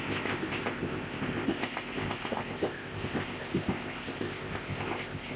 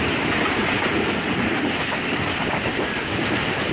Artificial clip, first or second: first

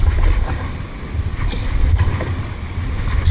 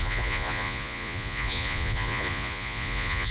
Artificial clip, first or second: second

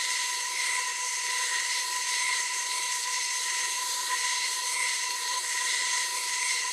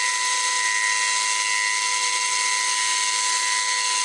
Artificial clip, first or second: first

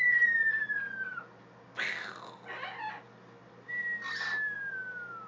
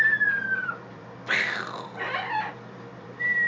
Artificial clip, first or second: second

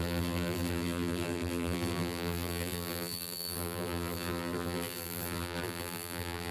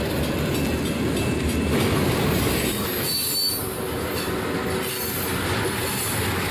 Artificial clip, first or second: first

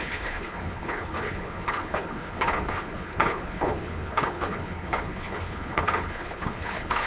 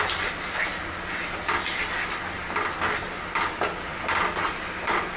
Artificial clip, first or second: first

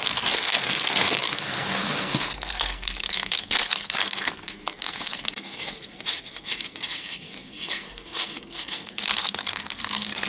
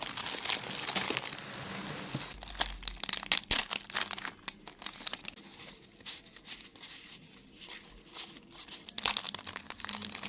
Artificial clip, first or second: first